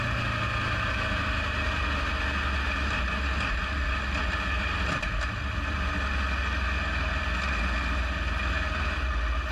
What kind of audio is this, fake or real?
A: real